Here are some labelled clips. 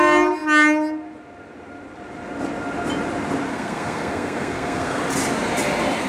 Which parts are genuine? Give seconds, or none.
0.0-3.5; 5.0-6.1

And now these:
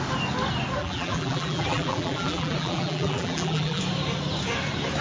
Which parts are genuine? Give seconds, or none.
0.0-0.8; 3.8-5.0

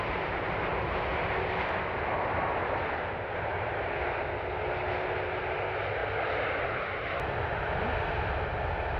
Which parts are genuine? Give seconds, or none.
0.0-9.0

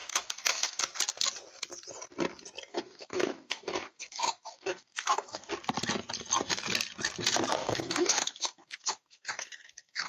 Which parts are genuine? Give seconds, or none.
0.8-2.7; 5.5-7.6

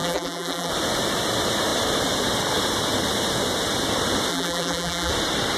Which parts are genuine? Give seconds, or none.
0.7-4.3; 5.1-5.6

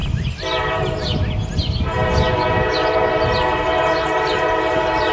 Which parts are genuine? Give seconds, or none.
0.0-5.1